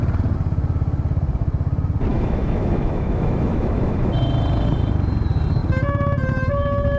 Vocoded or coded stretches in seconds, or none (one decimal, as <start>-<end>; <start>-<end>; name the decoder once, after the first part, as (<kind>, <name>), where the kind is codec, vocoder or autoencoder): 2.1-4.1 (autoencoder, DAC-VAE)